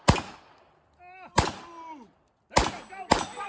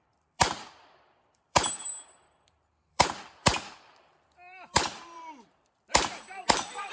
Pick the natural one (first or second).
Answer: first